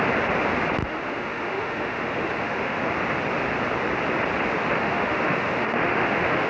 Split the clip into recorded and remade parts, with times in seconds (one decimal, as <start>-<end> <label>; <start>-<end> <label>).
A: 0.0-0.8 recorded; 0.8-2.9 remade; 2.9-4.6 recorded; 4.6-6.5 remade